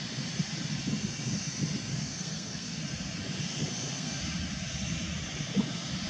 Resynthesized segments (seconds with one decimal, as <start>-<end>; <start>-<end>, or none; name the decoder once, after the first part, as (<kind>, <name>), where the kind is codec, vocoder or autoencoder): 1.9-2.8 (codec, SNAC); 3.5-4.2